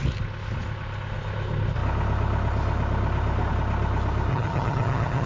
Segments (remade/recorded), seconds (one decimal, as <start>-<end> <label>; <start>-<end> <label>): 0.0-4.3 recorded; 4.3-5.3 remade

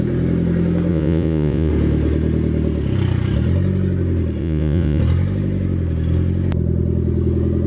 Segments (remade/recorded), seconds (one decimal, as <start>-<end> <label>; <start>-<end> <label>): 0.0-0.9 recorded; 0.9-1.7 remade; 1.7-4.4 recorded; 4.4-5.0 remade; 5.0-7.7 recorded

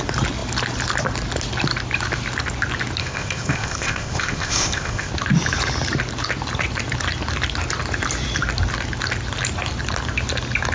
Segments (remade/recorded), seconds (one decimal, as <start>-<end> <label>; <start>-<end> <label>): 0.0-3.0 recorded; 3.0-5.1 remade; 5.1-10.7 recorded